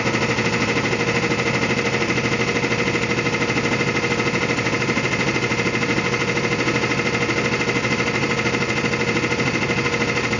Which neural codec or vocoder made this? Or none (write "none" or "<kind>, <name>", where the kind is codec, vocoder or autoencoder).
none